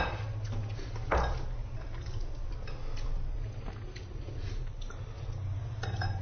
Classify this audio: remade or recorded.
recorded